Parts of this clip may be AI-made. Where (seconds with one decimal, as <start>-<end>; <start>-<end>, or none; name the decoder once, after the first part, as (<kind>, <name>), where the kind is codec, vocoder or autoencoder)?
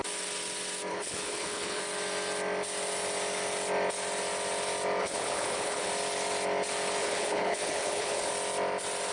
0.9-1.8 (codec, HILCodec); 5.0-5.9; 7.0-8.3